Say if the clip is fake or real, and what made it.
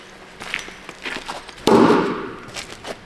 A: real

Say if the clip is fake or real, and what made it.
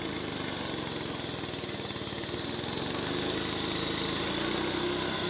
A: real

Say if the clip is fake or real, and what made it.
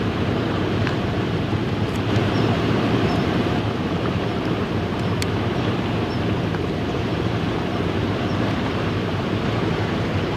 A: fake, vocoder, BigVGAN v2